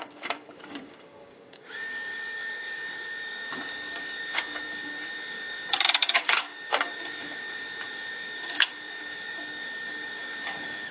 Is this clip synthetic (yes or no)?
yes